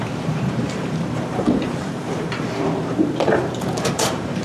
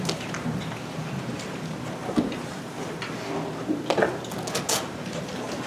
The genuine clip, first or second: second